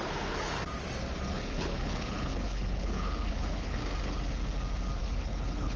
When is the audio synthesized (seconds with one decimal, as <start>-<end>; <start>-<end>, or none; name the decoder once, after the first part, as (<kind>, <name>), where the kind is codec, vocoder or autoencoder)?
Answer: 0.0-0.6 (codec, HILCodec); 1.3-3.8; 5.0-5.8